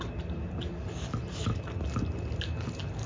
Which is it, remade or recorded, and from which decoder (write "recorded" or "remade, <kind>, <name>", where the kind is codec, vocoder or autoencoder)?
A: recorded